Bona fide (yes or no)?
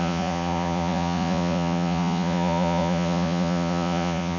no